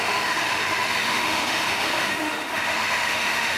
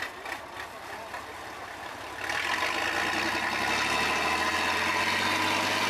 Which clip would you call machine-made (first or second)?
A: first